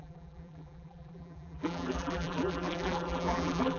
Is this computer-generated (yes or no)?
yes